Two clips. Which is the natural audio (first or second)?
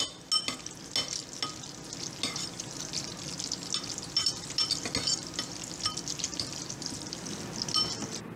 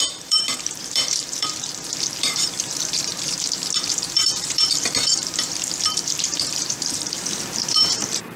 first